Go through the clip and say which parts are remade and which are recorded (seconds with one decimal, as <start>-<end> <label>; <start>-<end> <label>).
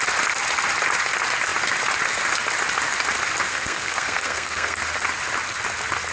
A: 0.0-3.5 recorded; 3.5-4.8 remade; 4.8-6.1 recorded